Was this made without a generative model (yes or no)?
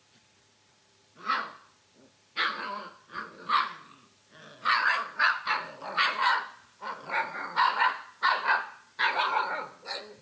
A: yes